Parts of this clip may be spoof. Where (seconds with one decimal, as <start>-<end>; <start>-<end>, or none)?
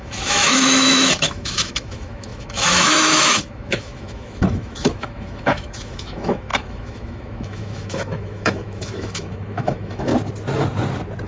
0.0-10.1